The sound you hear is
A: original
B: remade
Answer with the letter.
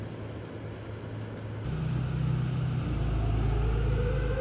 A